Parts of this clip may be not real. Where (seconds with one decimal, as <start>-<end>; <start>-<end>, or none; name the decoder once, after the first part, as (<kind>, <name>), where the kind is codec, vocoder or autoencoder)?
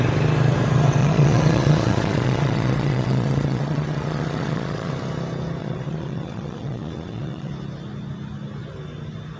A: 1.0-4.9 (vocoder, Vocos); 5.6-7.5